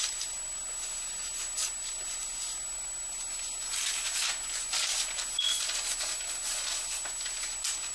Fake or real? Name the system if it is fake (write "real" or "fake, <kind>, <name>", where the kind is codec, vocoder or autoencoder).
real